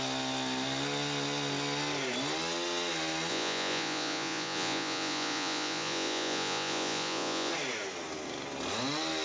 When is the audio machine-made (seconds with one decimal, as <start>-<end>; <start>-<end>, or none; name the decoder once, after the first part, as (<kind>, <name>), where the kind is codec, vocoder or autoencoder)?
3.3-7.5 (vocoder, Vocos)